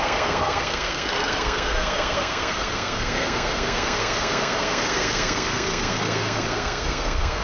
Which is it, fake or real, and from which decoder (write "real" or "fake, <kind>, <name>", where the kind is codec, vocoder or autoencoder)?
fake, codec, SNAC